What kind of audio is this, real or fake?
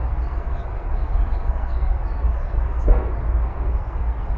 fake